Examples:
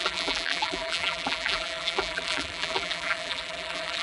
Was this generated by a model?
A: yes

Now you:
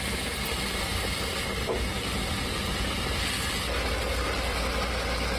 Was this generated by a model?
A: no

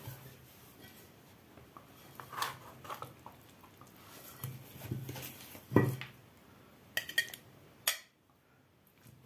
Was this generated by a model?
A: no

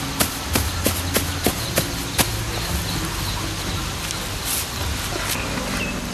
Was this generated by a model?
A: no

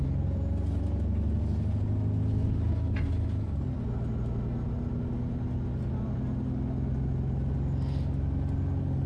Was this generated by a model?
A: no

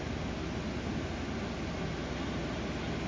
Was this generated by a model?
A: no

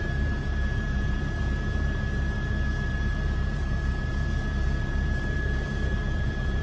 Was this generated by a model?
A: yes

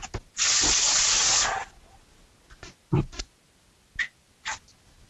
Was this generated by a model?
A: no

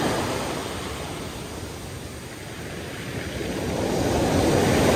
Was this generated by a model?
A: no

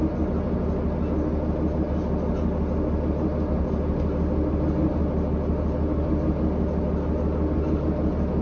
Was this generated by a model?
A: no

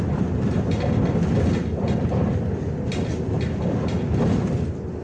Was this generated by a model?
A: no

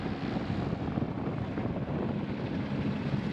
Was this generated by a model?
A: no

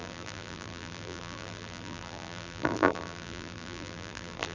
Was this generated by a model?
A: yes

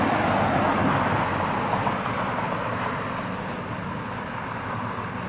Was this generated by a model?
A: no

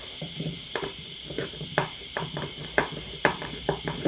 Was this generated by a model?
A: yes